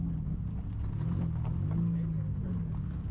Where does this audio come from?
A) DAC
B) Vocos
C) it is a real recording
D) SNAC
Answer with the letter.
C